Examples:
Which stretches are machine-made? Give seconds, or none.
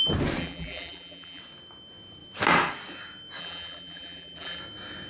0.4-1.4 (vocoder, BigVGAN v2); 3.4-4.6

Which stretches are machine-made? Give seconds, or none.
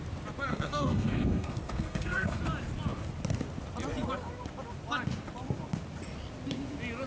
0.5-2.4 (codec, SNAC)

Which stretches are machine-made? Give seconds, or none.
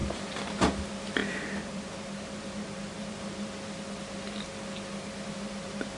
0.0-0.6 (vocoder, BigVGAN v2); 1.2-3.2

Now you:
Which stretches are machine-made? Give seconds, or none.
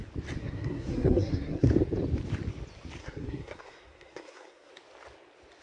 0.4-1.7 (codec, SNAC); 3.0-4.7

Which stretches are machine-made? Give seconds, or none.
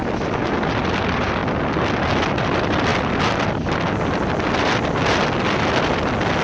0.9-1.4 (vocoder, BigVGAN v2); 2.3-2.9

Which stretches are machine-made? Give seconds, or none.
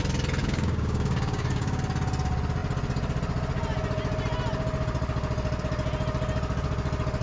0.4-1.8 (codec, DAC)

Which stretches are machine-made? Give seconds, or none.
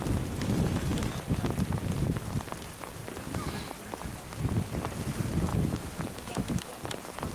5.5-6.7 (autoencoder, DAC-VAE)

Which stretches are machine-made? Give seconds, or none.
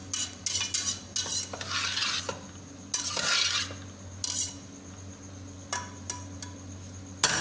none